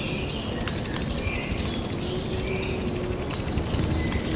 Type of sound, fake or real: real